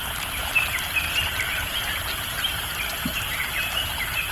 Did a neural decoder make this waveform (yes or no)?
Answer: yes